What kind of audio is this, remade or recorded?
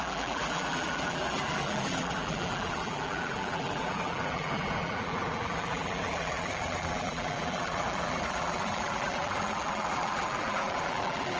remade